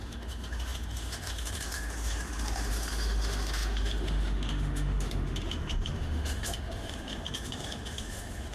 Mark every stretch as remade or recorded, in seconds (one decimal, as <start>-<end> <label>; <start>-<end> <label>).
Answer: 0.0-8.5 remade